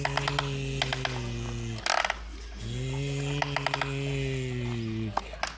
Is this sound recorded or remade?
recorded